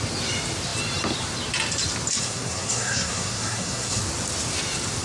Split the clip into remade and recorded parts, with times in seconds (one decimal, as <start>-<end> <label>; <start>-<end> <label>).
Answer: 0.0-2.2 recorded; 2.2-4.0 remade; 4.0-5.0 recorded